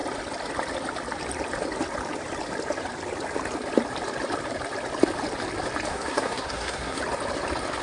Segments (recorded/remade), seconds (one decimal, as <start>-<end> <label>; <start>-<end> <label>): 0.0-5.9 recorded; 5.9-7.0 remade; 7.0-7.8 recorded